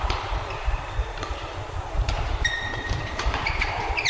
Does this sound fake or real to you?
fake